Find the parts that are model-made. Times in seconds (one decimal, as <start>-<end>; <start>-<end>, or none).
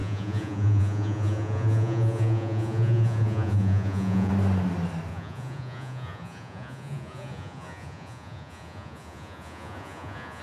0.0-4.3; 5.1-10.4